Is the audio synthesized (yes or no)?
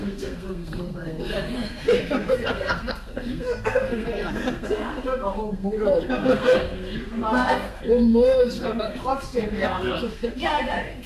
yes